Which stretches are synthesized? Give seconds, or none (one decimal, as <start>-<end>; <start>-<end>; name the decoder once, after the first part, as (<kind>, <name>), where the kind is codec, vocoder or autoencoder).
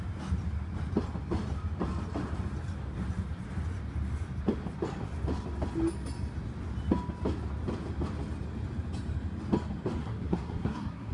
10.0-11.1 (codec, SNAC)